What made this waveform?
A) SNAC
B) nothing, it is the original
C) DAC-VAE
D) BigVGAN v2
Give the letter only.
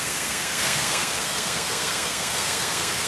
A